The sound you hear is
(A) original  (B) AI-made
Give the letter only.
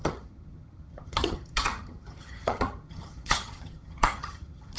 B